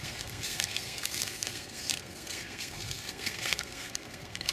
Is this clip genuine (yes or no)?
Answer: no